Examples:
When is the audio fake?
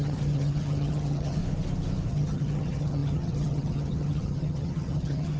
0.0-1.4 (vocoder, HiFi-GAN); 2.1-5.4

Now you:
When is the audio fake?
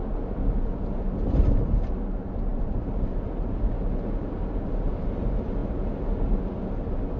none